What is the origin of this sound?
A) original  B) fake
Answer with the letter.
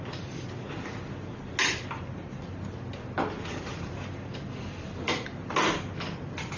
A